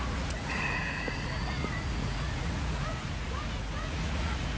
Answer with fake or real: fake